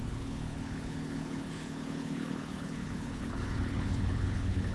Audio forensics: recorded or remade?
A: remade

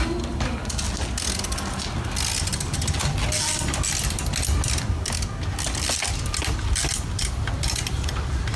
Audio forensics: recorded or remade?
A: recorded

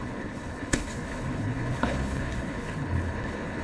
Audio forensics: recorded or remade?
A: remade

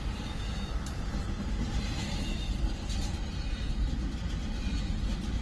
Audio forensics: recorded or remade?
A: recorded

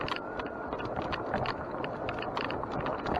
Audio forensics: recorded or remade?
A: recorded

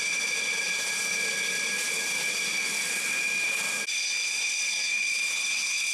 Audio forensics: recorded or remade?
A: recorded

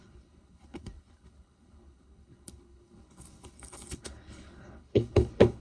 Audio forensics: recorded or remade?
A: remade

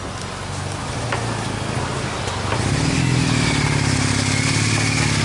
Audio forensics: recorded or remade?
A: recorded